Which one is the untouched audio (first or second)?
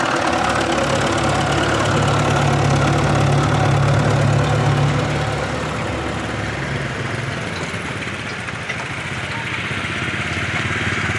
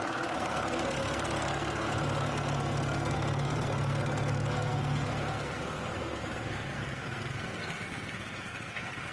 first